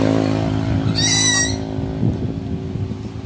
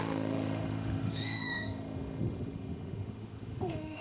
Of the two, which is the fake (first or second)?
second